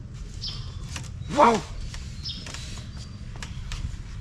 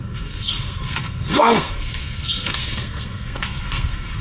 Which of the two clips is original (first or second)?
first